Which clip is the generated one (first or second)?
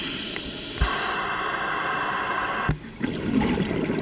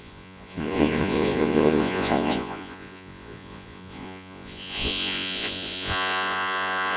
second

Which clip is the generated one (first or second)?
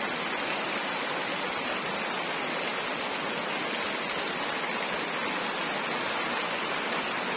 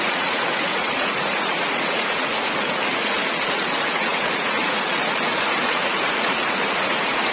second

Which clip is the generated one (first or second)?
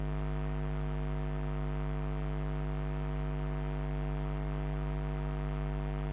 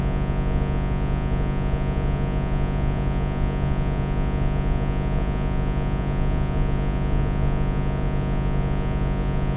second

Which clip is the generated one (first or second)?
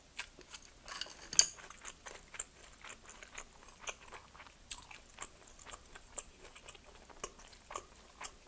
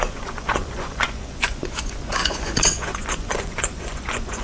second